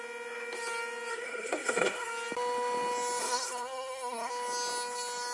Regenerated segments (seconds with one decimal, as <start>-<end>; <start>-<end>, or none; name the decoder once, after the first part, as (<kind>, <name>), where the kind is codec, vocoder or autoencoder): 1.1-2.1 (codec, SNAC); 3.2-4.3